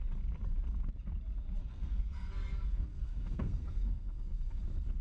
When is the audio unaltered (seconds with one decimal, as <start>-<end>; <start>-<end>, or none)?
0.0-1.6; 4.6-5.0